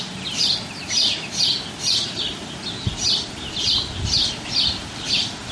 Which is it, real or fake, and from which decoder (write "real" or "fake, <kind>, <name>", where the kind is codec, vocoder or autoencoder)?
real